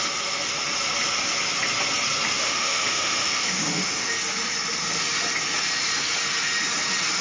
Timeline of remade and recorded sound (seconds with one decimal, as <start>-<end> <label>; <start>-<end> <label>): 0.0-2.4 recorded; 2.4-4.1 remade; 4.1-7.2 recorded